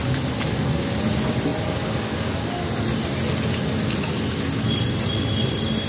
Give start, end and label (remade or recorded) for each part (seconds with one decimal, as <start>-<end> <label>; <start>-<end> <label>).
0.0-5.9 recorded